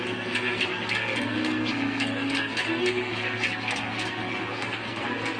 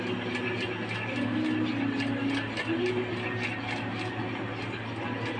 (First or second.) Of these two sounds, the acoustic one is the second